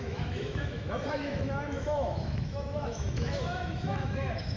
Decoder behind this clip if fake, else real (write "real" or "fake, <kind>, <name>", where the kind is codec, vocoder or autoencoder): fake, autoencoder, DAC-VAE